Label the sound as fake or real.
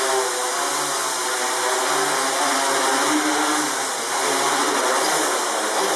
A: real